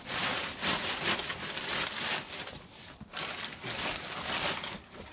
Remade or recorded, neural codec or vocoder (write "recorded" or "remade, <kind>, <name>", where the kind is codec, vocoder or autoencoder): recorded